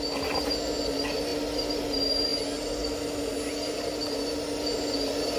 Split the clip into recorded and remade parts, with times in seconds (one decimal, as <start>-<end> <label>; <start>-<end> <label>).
0.0-5.4 recorded